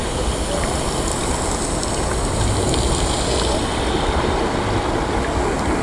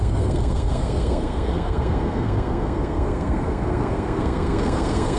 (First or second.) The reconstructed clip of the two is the second